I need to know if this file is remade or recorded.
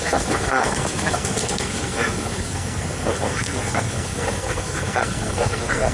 remade